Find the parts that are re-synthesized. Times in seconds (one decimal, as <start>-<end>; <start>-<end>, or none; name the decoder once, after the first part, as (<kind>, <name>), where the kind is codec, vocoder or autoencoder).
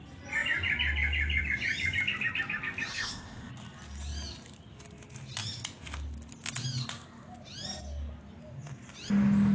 2.9-3.5 (codec, ZipCodec)